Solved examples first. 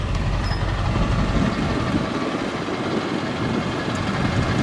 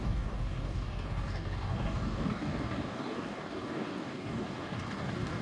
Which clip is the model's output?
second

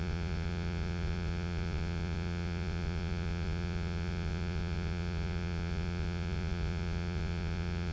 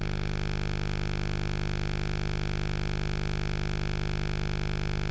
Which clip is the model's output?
first